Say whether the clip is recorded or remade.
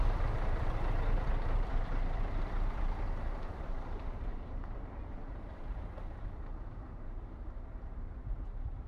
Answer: remade